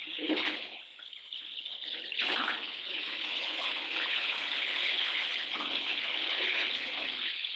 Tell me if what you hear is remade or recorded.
remade